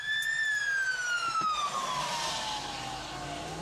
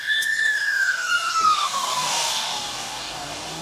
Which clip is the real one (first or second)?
first